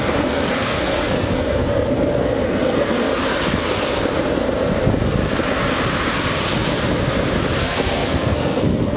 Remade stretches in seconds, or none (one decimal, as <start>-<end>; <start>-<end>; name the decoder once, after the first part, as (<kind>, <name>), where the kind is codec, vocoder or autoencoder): 0.0-3.1 (codec, SNAC); 7.6-9.0